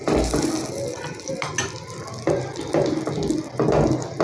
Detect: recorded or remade recorded